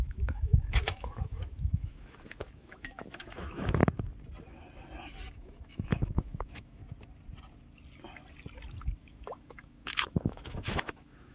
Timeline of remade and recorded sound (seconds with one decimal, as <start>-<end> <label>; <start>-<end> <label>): 0.0-3.8 remade; 3.8-5.3 recorded; 5.3-6.8 remade; 6.8-9.0 recorded; 9.0-11.3 remade